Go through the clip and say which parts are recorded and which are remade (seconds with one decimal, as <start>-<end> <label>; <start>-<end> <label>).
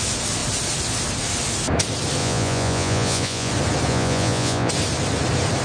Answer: 0.0-2.2 recorded; 2.2-3.5 remade; 3.5-3.9 recorded; 3.9-4.7 remade; 4.7-5.6 recorded